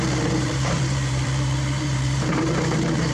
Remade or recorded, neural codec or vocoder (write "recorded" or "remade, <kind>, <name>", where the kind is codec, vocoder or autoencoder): remade, vocoder, BigVGAN v2